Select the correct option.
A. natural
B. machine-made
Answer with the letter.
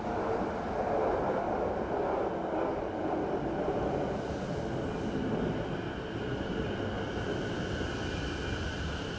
A